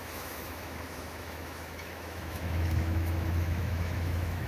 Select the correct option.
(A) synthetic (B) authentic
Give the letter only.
A